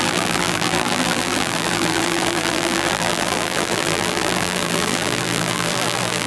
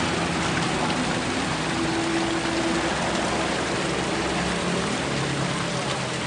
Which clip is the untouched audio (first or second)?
second